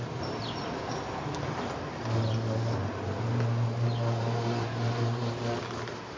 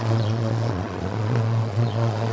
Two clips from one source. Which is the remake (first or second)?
second